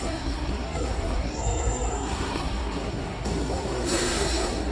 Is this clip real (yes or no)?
no